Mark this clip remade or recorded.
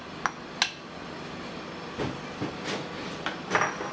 recorded